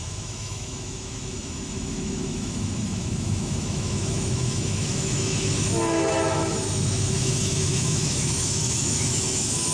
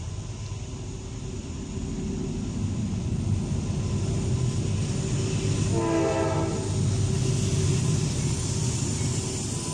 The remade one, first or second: first